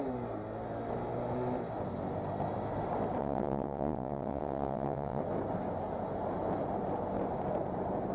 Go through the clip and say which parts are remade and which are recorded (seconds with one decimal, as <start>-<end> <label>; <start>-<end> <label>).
0.0-3.2 recorded; 3.2-5.2 remade; 5.2-8.1 recorded

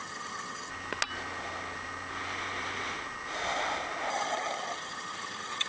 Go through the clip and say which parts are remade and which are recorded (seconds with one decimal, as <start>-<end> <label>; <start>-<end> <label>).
0.0-0.7 remade; 0.7-4.1 recorded; 4.1-5.7 remade

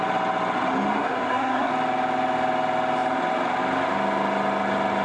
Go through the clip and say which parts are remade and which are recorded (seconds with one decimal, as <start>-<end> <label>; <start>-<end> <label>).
0.0-0.9 recorded; 0.9-1.7 remade; 1.7-5.0 recorded

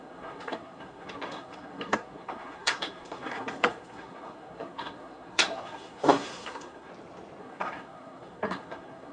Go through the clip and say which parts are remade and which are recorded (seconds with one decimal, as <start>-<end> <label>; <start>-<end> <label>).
0.0-6.9 remade; 6.9-7.4 recorded; 7.4-9.1 remade

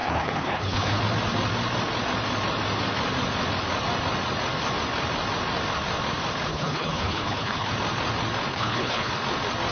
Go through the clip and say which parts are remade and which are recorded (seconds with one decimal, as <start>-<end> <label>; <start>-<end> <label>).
0.0-1.0 remade; 1.0-6.5 recorded; 6.5-7.7 remade; 7.7-8.5 recorded; 8.5-9.1 remade; 9.1-9.7 recorded

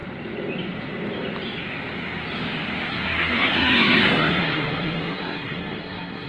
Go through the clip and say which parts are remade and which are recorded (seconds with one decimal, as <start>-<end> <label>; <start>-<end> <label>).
0.0-2.9 recorded; 2.9-6.3 remade

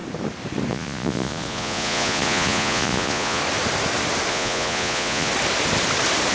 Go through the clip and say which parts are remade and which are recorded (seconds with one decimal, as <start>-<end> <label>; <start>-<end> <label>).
0.0-0.7 recorded; 0.7-3.4 remade; 3.4-4.3 recorded; 4.3-5.3 remade; 5.3-6.3 recorded